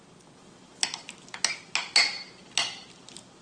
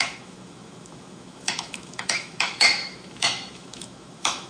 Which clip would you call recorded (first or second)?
first